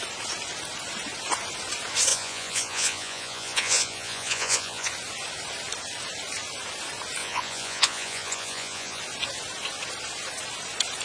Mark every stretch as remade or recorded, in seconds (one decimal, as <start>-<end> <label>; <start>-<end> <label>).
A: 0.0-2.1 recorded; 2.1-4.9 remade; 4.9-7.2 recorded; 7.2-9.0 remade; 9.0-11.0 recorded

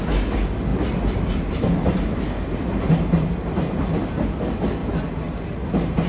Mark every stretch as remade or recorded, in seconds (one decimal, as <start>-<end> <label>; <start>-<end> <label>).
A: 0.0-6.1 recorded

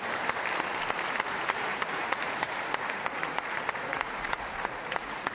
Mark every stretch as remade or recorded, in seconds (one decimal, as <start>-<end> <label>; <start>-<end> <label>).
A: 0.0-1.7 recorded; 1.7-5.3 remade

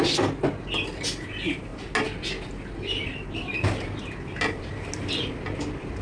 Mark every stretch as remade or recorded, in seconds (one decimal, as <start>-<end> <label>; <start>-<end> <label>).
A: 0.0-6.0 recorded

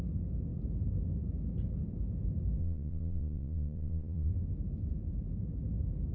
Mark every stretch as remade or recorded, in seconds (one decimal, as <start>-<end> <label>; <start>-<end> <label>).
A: 0.0-2.6 recorded; 2.6-4.3 remade; 4.3-6.1 recorded